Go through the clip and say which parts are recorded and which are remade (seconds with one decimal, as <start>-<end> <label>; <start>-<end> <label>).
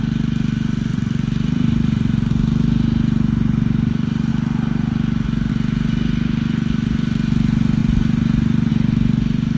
0.0-0.9 recorded; 0.9-2.3 remade; 2.3-9.6 recorded